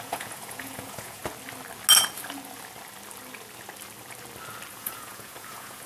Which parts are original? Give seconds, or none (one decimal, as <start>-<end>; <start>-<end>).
1.2-4.7